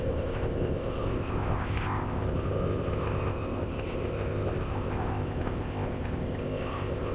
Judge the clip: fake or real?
fake